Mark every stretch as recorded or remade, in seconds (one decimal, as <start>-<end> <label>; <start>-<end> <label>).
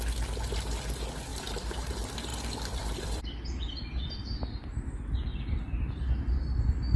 0.0-1.3 recorded; 1.3-1.9 remade; 1.9-2.3 recorded; 2.3-3.2 remade; 3.2-7.0 recorded